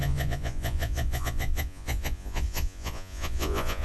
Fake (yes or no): yes